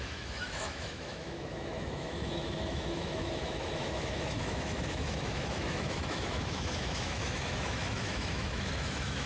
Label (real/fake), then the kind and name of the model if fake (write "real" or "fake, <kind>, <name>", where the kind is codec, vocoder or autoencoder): fake, autoencoder, DAC-VAE